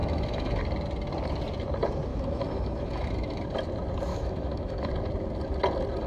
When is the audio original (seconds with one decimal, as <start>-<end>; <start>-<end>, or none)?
0.6-2.1; 3.4-4.1; 4.9-6.1